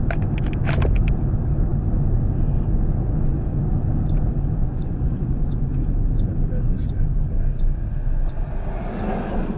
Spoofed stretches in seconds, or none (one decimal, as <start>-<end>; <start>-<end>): 4.6-5.7

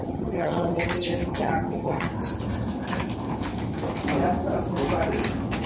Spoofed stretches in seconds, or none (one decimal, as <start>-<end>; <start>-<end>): 0.0-0.8; 1.3-2.1